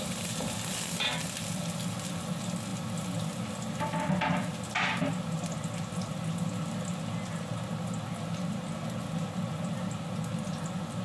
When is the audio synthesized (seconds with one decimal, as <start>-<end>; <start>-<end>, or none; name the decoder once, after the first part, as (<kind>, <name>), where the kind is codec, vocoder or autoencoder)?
none